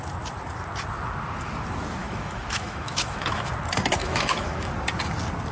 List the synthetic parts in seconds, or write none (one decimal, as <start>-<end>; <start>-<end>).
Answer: 2.0-3.5; 4.0-4.7